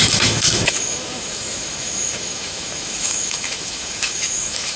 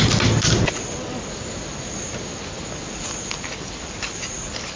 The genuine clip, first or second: second